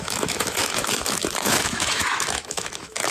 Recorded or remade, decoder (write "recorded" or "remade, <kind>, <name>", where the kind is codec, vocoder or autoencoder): remade, autoencoder, DAC-VAE